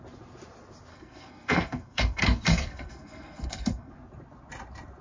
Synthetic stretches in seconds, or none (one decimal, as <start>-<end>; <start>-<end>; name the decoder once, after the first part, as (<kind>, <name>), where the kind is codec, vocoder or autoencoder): 0.9-3.9 (codec, SNAC)